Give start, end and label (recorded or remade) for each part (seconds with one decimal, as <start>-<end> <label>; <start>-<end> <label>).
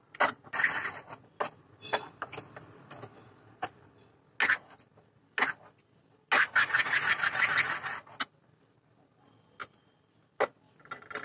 0.0-11.2 recorded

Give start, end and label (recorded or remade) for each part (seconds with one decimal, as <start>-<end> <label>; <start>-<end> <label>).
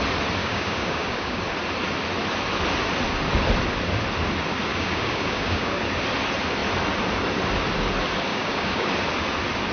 0.0-0.4 recorded; 0.4-1.4 remade; 1.4-4.7 recorded; 4.7-5.9 remade; 5.9-8.3 recorded; 8.3-8.9 remade; 8.9-9.7 recorded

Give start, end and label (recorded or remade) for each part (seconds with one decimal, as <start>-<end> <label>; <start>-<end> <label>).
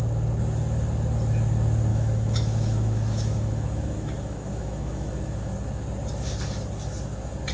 0.0-1.9 recorded; 1.9-5.5 remade; 5.5-7.5 recorded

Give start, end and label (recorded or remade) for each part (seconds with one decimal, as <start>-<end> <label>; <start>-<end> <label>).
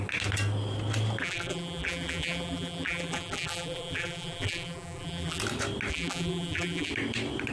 0.0-1.2 recorded; 1.2-5.4 remade; 5.4-5.9 recorded; 5.9-6.9 remade; 6.9-7.5 recorded